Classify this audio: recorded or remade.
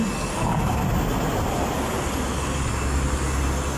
recorded